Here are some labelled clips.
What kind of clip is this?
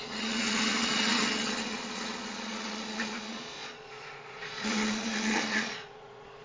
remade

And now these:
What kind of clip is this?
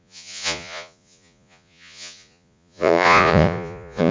remade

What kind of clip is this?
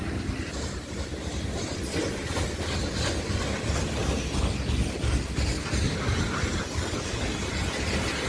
recorded